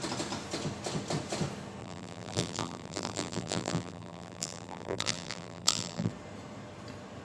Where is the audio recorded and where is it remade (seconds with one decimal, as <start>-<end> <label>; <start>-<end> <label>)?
0.0-1.8 recorded; 1.8-6.1 remade; 6.1-7.2 recorded